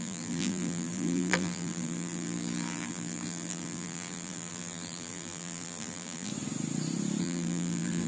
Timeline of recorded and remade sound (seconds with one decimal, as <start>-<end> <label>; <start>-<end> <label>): 0.0-6.3 remade; 6.3-7.2 recorded; 7.2-8.1 remade